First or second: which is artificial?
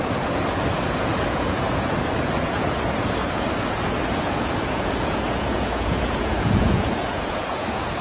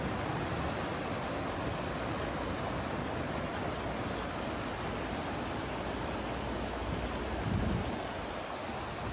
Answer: first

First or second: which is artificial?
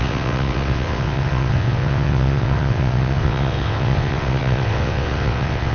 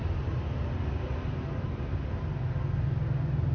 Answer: first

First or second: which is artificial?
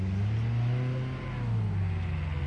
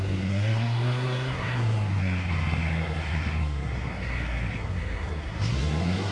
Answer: second